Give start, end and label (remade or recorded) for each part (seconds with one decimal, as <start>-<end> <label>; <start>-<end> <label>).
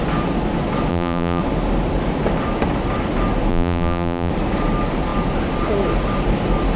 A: 0.0-0.9 recorded; 0.9-1.4 remade; 1.4-3.5 recorded; 3.5-4.3 remade; 4.3-6.8 recorded